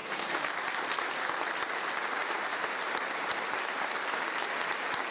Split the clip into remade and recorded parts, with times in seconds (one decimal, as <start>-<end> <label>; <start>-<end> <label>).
0.0-1.1 remade; 1.1-2.2 recorded; 2.2-3.9 remade; 3.9-5.1 recorded